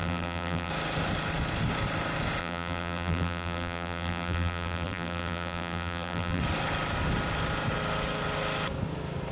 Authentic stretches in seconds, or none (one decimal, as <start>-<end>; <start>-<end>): 0.7-2.4; 6.4-9.3